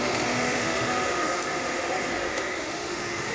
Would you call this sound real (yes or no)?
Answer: no